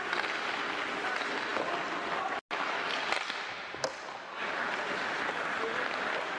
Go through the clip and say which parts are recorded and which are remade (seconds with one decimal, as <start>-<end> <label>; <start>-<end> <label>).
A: 0.0-6.4 recorded